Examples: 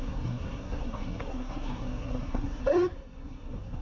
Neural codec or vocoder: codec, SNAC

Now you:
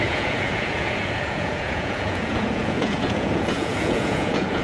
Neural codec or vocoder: vocoder, Vocos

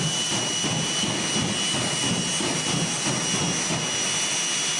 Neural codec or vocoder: none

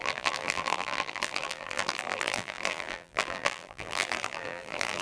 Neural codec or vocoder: vocoder, BigVGAN v2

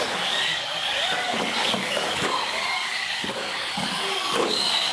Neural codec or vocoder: codec, DAC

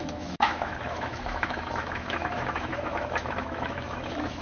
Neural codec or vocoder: autoencoder, DAC-VAE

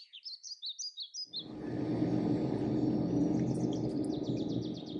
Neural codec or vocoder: none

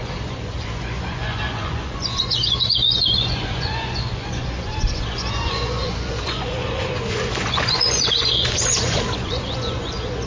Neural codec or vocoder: vocoder, Vocos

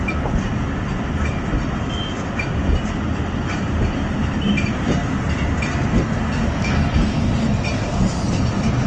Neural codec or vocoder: none